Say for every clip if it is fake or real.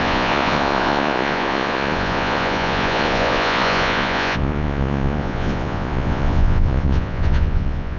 fake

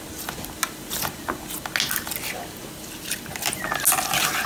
real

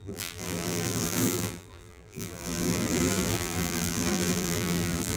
fake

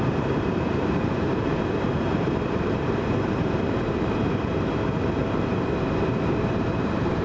fake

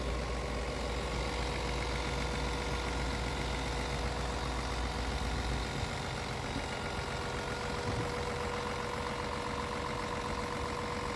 real